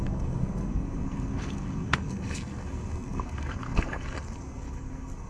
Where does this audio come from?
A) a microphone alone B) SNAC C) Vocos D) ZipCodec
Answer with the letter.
B